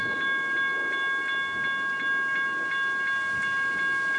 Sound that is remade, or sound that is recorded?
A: recorded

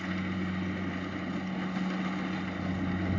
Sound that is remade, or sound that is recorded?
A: recorded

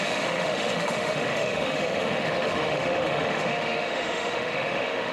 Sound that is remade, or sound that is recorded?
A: remade